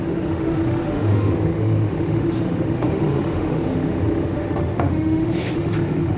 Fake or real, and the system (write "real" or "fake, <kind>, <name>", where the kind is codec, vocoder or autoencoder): fake, autoencoder, DAC-VAE